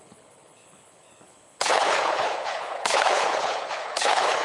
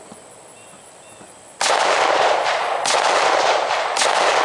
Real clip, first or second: second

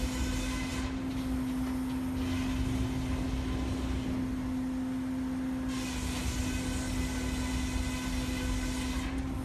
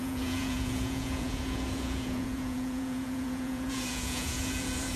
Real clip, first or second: first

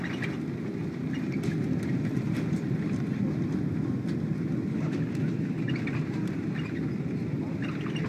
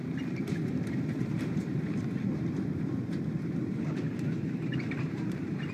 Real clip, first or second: first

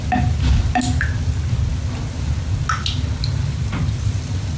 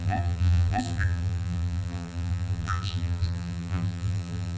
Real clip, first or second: first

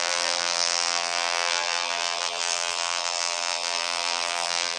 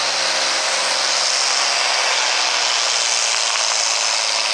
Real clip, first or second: second